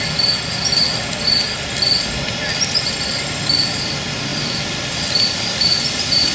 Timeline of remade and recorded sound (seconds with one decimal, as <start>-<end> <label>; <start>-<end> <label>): 0.0-6.3 recorded